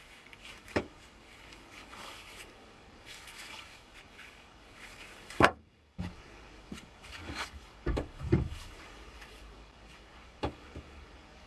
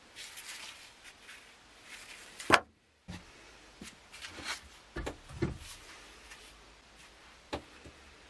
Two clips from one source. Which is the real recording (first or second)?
second